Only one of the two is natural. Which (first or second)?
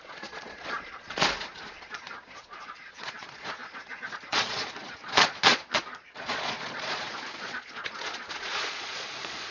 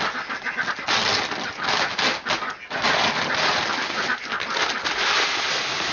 second